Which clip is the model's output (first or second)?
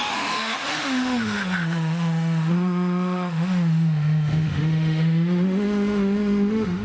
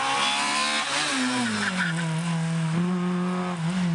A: first